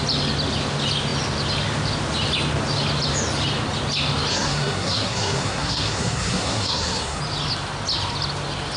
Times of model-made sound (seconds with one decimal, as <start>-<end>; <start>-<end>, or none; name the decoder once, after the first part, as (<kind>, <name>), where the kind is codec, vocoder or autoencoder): 4.3-7.2 (codec, SNAC)